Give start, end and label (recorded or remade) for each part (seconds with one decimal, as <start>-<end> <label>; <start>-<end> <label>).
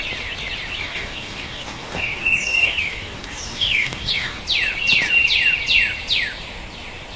0.0-0.8 recorded; 0.8-4.4 remade; 4.4-7.2 recorded